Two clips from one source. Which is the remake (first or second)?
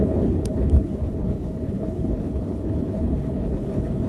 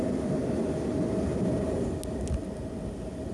first